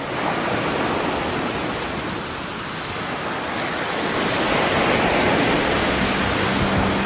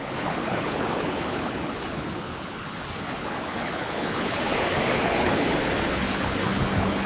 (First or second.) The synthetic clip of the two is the second